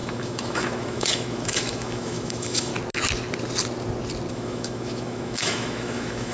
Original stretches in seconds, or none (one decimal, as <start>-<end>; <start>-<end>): 2.7-4.3